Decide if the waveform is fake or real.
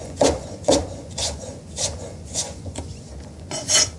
fake